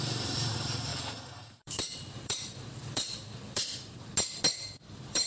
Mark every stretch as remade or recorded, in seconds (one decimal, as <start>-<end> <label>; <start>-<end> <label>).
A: 0.0-0.9 remade; 0.9-1.5 recorded; 1.5-4.1 remade; 4.1-4.8 recorded; 4.8-5.3 remade